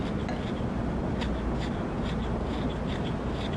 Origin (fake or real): real